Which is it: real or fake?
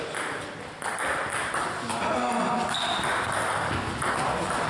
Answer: real